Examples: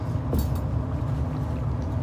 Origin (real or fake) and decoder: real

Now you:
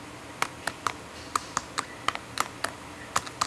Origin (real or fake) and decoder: real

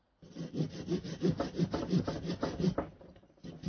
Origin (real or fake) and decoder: real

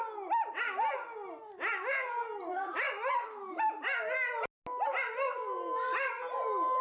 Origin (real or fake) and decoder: real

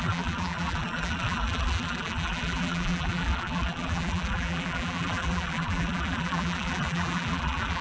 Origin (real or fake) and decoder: fake, vocoder, BigVGAN v2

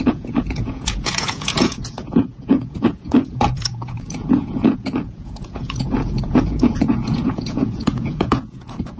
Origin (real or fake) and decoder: fake, vocoder, Vocos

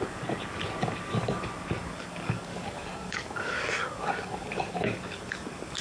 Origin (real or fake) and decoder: fake, codec, DAC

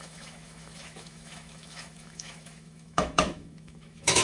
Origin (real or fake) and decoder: fake, autoencoder, DAC-VAE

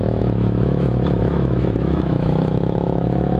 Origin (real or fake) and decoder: fake, autoencoder, DAC-VAE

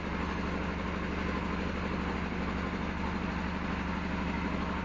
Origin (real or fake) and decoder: real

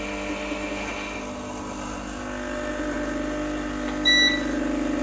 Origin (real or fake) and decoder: real